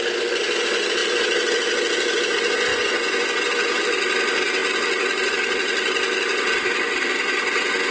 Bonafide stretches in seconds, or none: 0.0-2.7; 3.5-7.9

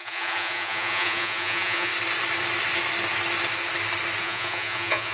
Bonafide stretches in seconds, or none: 1.9-4.2

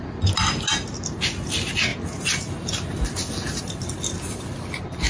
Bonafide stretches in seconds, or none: 0.0-5.1

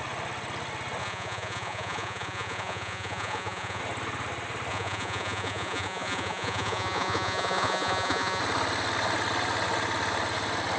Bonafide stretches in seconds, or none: 0.0-1.0; 3.8-4.7; 8.4-10.8

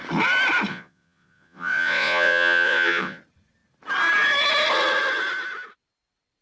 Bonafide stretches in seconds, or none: 0.0-0.7; 3.2-6.4